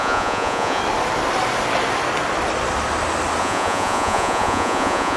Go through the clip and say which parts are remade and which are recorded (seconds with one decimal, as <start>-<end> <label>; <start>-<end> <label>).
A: 0.0-0.8 remade; 0.8-3.4 recorded; 3.4-5.2 remade